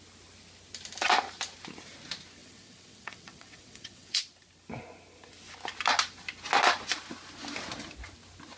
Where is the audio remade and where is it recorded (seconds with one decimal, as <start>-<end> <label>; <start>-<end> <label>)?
0.0-2.4 recorded; 2.4-4.2 remade; 4.2-8.6 recorded